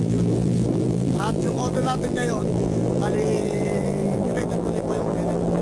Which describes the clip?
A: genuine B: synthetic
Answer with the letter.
B